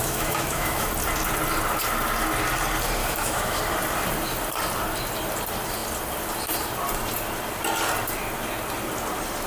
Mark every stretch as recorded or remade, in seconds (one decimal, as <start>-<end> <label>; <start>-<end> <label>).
0.0-0.9 remade; 0.9-3.0 recorded; 3.0-3.6 remade; 3.6-9.5 recorded